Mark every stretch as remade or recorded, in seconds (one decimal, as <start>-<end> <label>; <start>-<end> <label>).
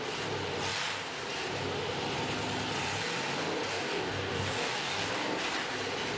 0.0-3.7 recorded; 3.7-5.1 remade; 5.1-6.2 recorded